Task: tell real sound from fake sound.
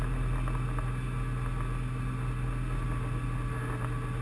real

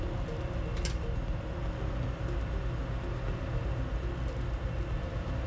real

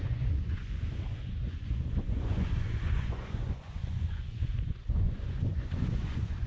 fake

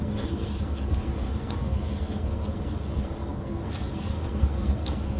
fake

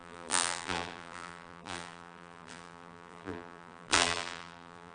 fake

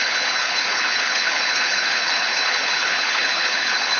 fake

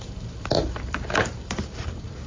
fake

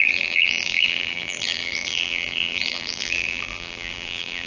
fake